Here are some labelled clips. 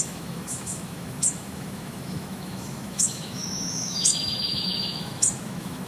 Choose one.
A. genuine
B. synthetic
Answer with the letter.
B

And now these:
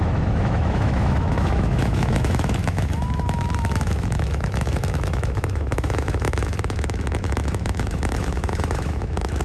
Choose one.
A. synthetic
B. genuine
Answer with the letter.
A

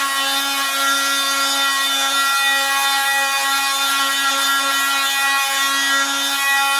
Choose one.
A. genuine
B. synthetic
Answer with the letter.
A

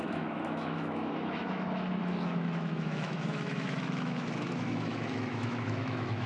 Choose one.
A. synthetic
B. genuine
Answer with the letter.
A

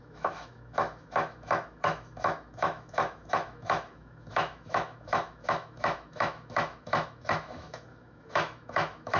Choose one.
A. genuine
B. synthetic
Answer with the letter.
B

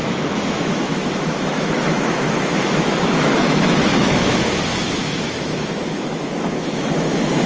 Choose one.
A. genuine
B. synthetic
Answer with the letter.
B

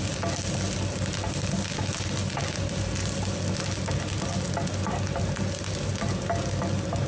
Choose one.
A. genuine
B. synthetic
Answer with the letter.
A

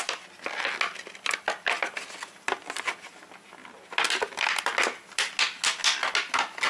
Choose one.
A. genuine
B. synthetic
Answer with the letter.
A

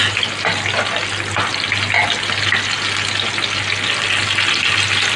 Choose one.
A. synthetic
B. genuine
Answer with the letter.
B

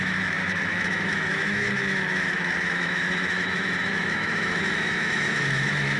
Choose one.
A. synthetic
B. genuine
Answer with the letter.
A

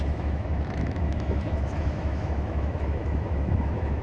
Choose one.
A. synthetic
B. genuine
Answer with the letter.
A